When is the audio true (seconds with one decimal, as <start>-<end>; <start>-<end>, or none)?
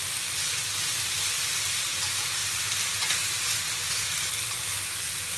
0.0-5.4